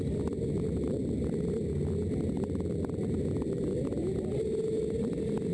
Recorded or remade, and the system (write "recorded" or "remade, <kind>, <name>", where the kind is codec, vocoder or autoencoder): recorded